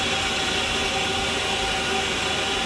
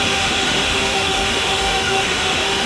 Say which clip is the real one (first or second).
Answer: first